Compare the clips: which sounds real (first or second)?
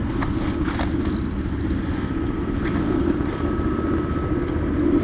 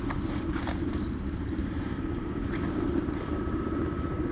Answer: first